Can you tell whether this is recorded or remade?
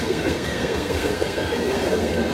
remade